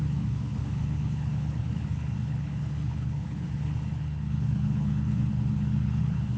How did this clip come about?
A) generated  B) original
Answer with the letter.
A